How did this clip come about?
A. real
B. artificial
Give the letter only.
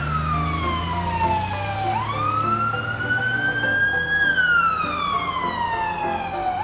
A